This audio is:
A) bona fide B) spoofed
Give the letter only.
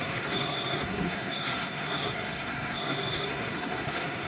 B